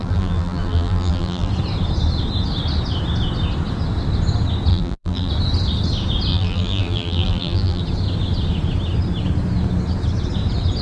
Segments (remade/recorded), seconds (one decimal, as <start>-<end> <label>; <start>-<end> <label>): 0.0-1.5 remade; 1.5-4.7 recorded; 4.7-5.3 remade; 5.3-6.3 recorded; 6.3-7.8 remade; 7.8-10.8 recorded